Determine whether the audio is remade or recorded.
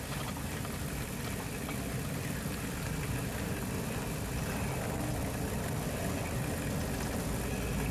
recorded